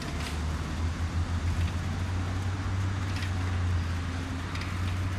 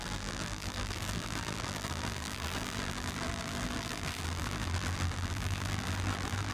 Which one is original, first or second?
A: first